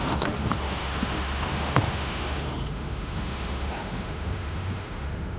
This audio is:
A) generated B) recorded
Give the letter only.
A